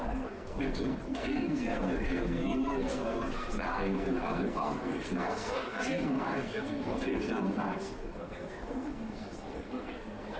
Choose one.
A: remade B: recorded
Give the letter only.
A